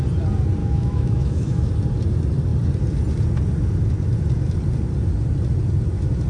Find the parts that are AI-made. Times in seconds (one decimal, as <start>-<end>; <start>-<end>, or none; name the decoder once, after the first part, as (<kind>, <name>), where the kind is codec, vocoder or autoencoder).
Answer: 0.6-1.7 (autoencoder, DAC-VAE)